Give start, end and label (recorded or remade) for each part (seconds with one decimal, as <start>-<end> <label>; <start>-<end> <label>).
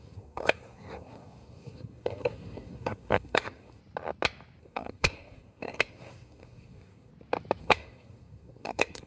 0.0-3.8 remade; 3.8-4.6 recorded; 4.6-7.1 remade; 7.1-7.6 recorded; 7.6-9.1 remade